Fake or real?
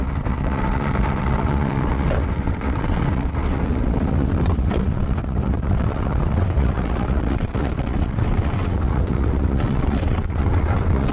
fake